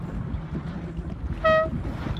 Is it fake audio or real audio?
real